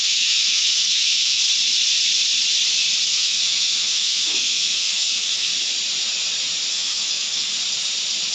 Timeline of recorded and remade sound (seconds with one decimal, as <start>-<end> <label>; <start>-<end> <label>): 0.0-1.4 remade; 1.4-3.1 recorded; 3.1-5.5 remade; 5.5-6.7 recorded; 6.7-7.5 remade; 7.5-8.3 recorded